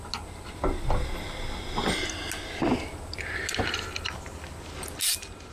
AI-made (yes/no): no